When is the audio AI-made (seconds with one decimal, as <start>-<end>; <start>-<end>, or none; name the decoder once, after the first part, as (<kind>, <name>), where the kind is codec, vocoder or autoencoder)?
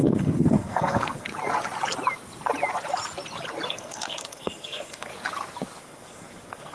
0.0-1.3 (codec, SNAC); 3.7-5.1; 5.8-6.7